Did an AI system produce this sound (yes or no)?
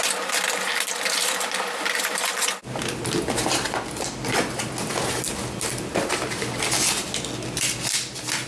no